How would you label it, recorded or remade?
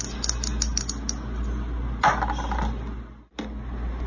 recorded